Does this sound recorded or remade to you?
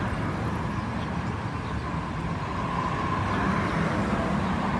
recorded